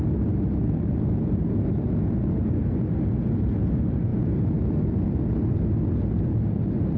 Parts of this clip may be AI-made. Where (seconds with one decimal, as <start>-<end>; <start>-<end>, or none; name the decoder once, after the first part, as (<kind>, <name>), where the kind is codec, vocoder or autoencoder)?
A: none